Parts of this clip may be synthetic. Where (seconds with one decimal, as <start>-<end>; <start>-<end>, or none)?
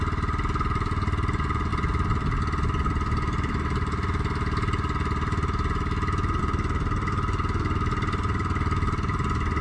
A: none